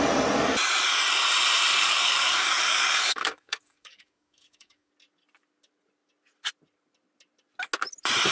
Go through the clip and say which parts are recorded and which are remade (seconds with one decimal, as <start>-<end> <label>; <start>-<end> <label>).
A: 0.0-1.7 recorded; 1.7-4.9 remade; 4.9-8.3 recorded